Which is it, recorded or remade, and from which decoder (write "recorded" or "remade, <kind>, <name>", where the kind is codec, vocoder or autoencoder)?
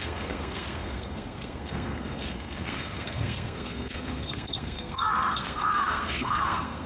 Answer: remade, codec, SNAC